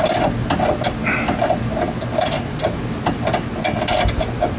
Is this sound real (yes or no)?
yes